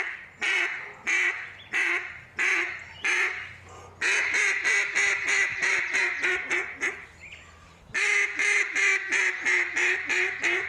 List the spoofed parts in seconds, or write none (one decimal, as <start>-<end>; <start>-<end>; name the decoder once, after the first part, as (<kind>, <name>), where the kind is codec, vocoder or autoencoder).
5.5-6.0 (vocoder, BigVGAN v2)